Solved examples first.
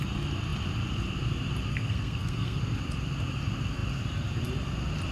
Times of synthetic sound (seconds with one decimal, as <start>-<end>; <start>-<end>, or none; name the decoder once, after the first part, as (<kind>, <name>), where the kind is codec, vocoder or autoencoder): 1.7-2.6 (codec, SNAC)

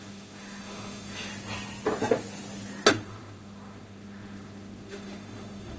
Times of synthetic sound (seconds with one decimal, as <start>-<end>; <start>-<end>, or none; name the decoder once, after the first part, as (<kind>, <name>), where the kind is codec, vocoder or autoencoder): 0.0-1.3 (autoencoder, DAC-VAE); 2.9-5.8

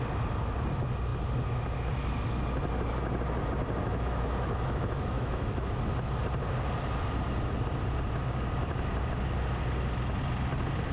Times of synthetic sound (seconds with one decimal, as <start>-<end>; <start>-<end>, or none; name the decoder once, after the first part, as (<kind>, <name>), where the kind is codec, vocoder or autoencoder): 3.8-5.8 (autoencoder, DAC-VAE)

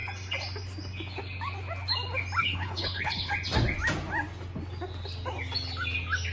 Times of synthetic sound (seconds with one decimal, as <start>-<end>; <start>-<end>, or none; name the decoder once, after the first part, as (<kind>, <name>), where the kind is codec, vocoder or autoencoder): 2.4-3.3 (codec, HILCodec)

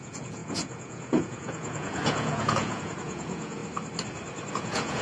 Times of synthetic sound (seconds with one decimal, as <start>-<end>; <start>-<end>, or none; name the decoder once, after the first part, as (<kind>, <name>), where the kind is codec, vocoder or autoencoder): 0.0-3.6 (vocoder, Vocos); 4.5-5.0

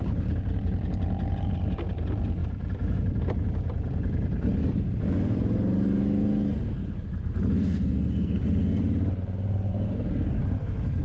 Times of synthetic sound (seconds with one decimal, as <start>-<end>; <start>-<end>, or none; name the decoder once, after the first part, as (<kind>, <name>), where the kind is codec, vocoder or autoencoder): 7.5-8.8 (codec, SNAC)